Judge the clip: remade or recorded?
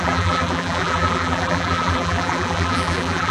remade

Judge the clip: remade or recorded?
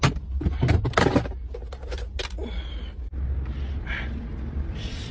recorded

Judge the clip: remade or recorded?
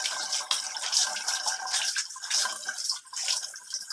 recorded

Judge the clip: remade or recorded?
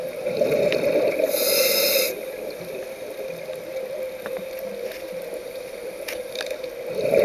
recorded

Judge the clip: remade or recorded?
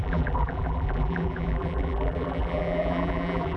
remade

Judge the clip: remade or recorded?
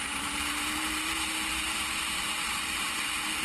remade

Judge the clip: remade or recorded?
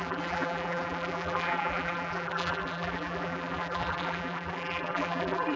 remade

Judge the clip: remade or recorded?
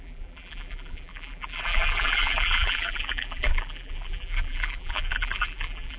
remade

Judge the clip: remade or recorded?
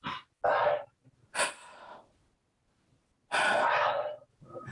recorded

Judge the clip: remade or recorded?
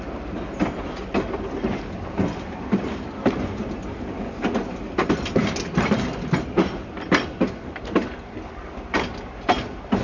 recorded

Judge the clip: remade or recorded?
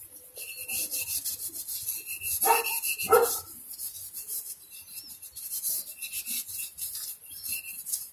recorded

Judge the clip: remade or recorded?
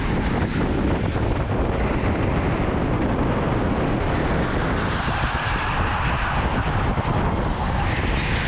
recorded